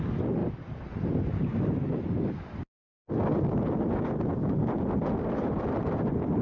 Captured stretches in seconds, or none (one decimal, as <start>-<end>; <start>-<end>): 0.0-6.4